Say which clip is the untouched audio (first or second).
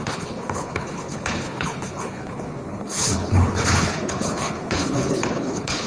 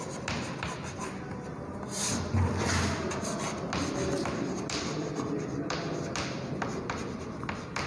second